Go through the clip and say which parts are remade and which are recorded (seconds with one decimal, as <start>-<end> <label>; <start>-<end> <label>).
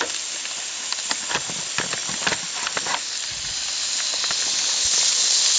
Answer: 0.0-5.6 recorded